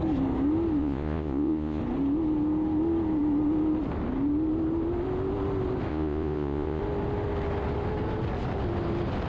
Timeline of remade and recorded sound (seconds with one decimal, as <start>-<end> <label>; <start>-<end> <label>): 0.0-0.8 recorded; 0.8-1.8 remade; 1.8-5.9 recorded; 5.9-6.8 remade; 6.8-9.3 recorded